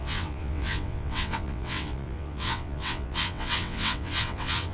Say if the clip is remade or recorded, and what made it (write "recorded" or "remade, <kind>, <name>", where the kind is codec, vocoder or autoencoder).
remade, vocoder, WaveNeXt